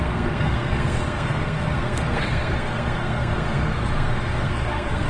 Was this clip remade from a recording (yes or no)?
yes